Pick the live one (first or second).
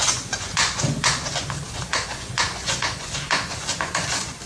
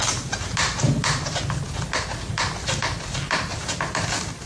second